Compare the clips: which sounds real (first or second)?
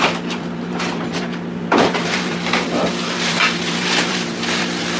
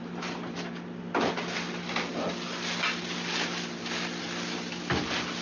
second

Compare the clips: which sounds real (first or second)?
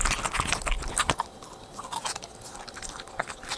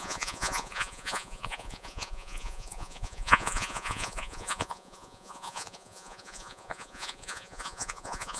first